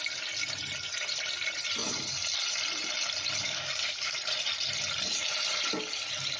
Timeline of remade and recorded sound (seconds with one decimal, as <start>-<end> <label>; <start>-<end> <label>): 0.0-3.4 recorded; 3.4-4.1 remade; 4.1-6.4 recorded